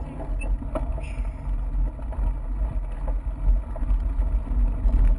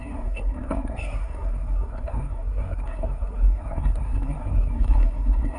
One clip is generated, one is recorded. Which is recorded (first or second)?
first